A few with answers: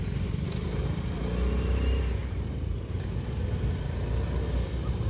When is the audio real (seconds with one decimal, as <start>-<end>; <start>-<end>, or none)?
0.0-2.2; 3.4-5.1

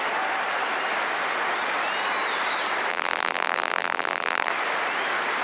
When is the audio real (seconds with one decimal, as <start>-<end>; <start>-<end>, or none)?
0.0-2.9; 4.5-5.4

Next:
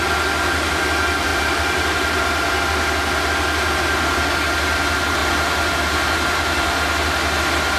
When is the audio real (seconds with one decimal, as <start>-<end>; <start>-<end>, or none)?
0.0-1.3; 2.2-5.2; 6.8-7.8